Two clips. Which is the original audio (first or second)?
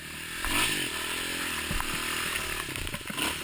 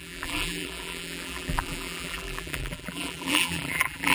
first